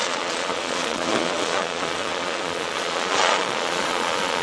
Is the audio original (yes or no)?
no